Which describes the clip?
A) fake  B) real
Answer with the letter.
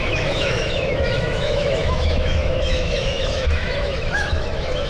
A